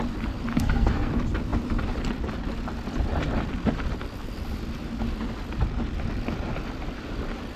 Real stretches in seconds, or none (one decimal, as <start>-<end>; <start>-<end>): 0.0-0.5; 1.1-7.6